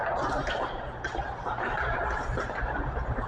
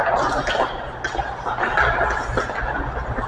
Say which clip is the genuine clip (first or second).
second